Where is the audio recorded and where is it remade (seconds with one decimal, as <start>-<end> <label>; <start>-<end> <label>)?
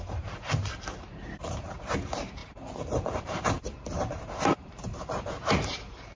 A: 0.0-6.1 remade